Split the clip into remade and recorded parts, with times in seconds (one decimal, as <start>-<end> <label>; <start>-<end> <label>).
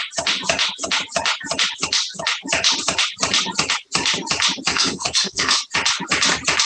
0.0-4.7 recorded; 4.7-5.6 remade; 5.6-6.6 recorded